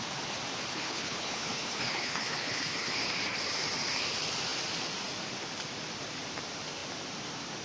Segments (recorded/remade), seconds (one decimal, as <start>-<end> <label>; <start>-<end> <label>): 0.0-0.7 recorded; 0.7-2.9 remade; 2.9-7.6 recorded